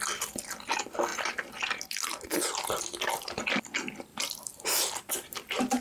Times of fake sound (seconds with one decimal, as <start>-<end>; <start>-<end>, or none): 1.1-1.6; 4.1-5.1